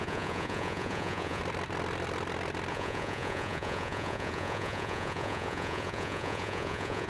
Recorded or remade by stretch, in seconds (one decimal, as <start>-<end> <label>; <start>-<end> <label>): 0.0-1.4 remade; 1.4-2.7 recorded; 2.7-7.1 remade